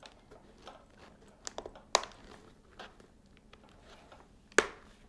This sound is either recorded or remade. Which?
recorded